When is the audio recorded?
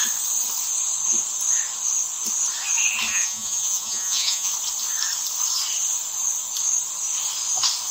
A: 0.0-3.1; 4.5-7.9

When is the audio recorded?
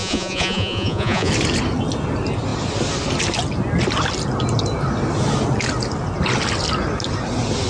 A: 1.3-7.7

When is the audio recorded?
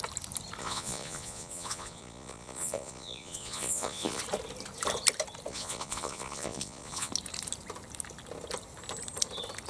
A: 0.0-0.6; 4.2-5.5; 7.1-9.7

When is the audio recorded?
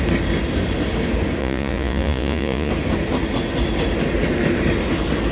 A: 0.0-1.4; 2.7-5.3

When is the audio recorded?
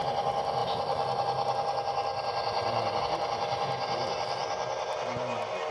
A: 0.0-5.7